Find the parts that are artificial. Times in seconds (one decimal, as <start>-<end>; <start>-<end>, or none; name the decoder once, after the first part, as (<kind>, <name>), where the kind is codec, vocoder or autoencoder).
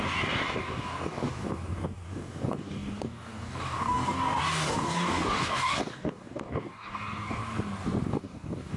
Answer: 0.0-7.4 (codec, DAC); 8.1-8.8